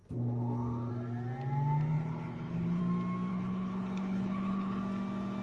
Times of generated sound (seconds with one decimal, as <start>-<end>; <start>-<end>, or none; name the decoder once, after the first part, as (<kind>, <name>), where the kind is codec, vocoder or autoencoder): 1.9-2.8 (codec, HILCodec); 3.3-4.8

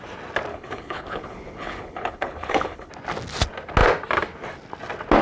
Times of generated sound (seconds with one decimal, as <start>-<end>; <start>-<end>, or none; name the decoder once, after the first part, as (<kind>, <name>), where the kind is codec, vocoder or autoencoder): 0.5-2.9 (codec, HILCodec)

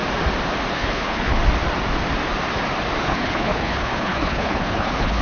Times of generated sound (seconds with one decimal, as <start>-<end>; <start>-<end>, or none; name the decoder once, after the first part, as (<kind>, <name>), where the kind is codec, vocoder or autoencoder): 0.7-1.4 (codec, HILCodec); 3.0-5.2

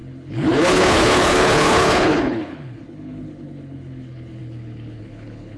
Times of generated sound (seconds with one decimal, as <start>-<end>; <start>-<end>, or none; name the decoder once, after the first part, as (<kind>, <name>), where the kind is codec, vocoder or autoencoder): 0.0-5.6 (codec, HILCodec)

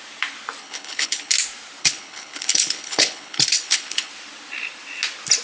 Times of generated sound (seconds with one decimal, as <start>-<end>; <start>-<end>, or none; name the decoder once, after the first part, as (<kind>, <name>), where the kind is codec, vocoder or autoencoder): 0.6-1.3 (codec, HILCodec); 1.8-4.1

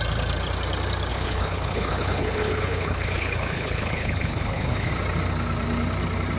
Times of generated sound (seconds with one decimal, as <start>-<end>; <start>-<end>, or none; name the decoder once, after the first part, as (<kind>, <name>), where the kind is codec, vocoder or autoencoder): 1.1-4.9 (codec, HILCodec)